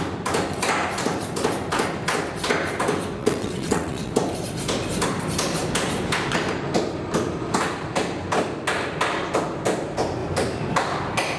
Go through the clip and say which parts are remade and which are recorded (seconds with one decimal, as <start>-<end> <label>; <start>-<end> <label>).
0.0-3.2 recorded; 3.2-4.1 remade; 4.1-11.4 recorded